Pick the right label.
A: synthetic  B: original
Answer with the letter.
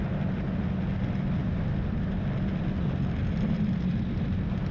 B